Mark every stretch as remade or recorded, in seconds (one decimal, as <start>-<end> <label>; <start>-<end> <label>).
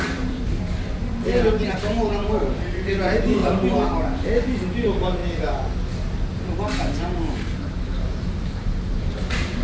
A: 0.0-3.4 remade; 3.4-4.0 recorded; 4.0-5.2 remade; 5.2-8.0 recorded; 8.0-9.6 remade